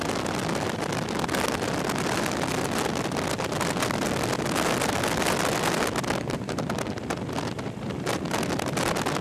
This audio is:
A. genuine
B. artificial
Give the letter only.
A